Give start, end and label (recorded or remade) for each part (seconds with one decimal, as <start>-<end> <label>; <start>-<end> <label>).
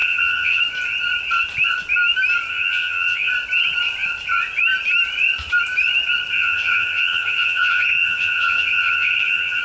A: 0.0-0.6 remade; 0.6-2.5 recorded; 2.5-3.3 remade; 3.3-6.3 recorded; 6.3-9.6 remade